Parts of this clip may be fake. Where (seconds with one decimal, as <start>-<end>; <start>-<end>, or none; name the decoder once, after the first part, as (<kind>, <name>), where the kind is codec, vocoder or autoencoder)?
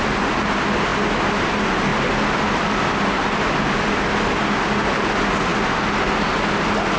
none